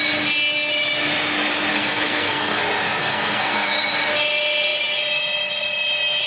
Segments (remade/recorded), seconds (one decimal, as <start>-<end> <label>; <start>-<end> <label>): 0.0-1.7 recorded; 1.7-2.6 remade; 2.6-3.0 recorded; 3.0-3.9 remade; 3.9-6.3 recorded